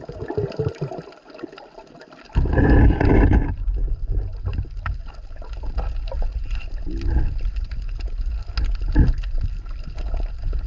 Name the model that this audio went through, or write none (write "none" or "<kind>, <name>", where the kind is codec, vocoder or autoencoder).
none